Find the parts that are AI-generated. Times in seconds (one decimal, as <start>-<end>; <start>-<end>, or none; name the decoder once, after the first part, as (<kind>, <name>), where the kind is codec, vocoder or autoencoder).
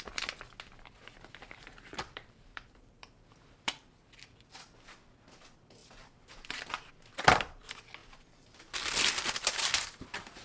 1.4-3.9 (vocoder, BigVGAN v2); 8.0-9.7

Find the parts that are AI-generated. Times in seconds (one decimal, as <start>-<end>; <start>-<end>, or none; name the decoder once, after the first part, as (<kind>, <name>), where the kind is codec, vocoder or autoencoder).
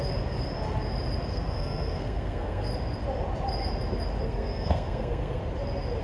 1.3-2.7 (codec, SNAC); 4.2-5.4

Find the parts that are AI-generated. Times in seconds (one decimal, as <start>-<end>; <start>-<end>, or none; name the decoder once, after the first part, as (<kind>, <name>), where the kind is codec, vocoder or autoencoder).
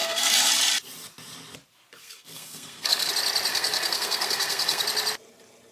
0.0-0.5 (codec, SNAC); 2.0-3.1; 3.5-4.8